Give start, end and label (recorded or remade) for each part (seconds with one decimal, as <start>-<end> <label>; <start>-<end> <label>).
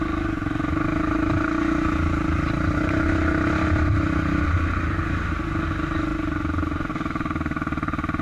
0.0-8.2 recorded